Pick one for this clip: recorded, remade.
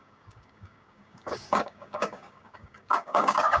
remade